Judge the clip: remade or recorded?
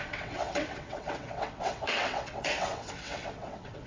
remade